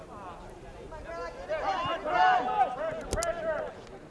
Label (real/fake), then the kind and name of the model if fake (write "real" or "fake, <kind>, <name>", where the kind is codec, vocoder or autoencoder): real